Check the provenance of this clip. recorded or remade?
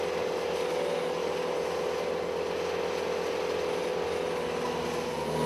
recorded